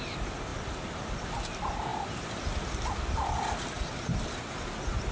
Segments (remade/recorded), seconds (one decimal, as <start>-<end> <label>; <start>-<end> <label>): 0.0-5.1 recorded